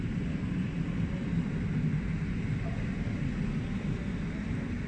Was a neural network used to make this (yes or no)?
no